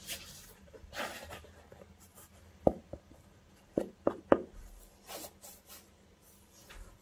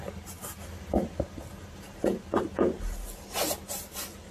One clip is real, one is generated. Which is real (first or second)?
second